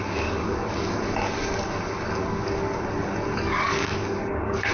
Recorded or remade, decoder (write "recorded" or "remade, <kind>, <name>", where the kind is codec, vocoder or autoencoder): remade, codec, DAC